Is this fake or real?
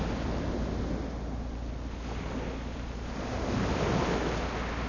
real